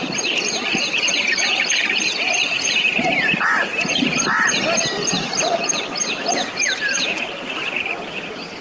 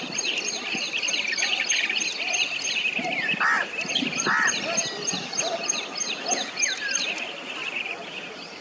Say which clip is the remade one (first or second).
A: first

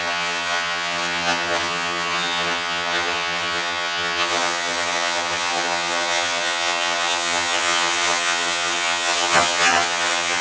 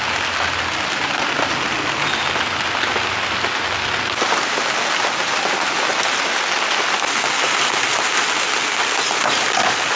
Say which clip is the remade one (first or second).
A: first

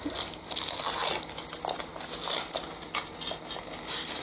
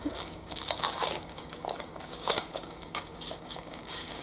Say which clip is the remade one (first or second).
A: second